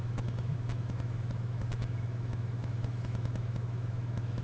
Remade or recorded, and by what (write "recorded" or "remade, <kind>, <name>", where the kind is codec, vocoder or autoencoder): remade, autoencoder, DAC-VAE